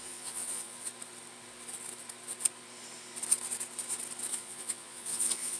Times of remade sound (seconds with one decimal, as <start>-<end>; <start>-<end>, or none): 0.0-0.9; 4.3-5.6